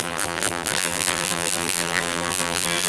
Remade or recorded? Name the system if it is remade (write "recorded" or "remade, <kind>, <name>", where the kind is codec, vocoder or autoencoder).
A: remade, vocoder, BigVGAN v2